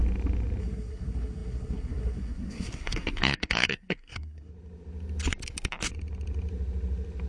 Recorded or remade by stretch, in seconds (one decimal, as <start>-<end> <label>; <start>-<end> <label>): 0.0-0.6 recorded; 0.6-4.5 remade; 4.5-7.3 recorded